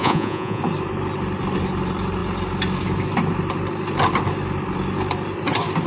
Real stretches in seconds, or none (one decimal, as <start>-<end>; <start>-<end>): 0.6-5.9